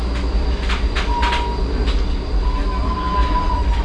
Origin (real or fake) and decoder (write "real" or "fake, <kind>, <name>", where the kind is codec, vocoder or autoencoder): real